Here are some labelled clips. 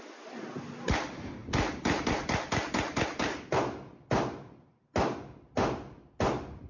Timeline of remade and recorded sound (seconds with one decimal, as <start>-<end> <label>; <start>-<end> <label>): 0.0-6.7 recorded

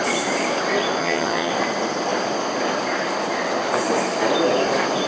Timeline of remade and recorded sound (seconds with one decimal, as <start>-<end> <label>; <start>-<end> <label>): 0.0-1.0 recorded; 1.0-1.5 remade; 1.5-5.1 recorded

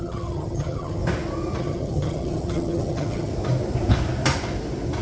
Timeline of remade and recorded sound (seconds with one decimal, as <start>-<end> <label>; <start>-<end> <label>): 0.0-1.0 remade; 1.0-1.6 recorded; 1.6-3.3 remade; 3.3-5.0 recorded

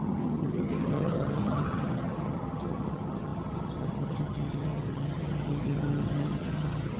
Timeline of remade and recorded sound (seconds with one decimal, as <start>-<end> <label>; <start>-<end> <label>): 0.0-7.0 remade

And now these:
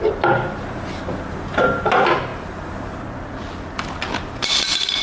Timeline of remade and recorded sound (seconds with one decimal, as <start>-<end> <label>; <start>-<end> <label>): 0.0-5.0 recorded

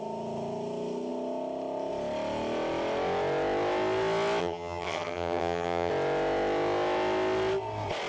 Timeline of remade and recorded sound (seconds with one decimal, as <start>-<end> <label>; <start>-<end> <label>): 0.0-4.4 recorded; 4.4-5.9 remade; 5.9-8.1 recorded